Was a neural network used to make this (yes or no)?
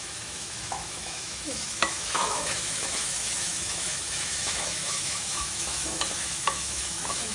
yes